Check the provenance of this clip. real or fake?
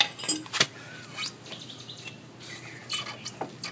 real